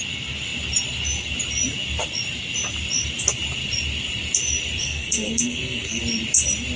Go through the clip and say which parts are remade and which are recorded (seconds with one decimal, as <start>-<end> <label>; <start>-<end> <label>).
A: 0.0-4.8 recorded; 4.8-6.0 remade; 6.0-6.8 recorded